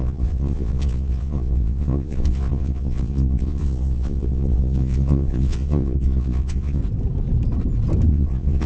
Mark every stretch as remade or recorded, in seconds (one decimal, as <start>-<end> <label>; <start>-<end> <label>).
0.0-6.8 remade; 6.8-8.1 recorded; 8.1-8.7 remade